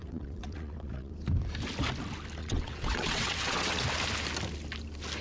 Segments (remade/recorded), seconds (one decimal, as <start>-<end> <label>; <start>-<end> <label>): 0.0-1.1 remade; 1.1-2.4 recorded; 2.4-3.8 remade; 3.8-5.2 recorded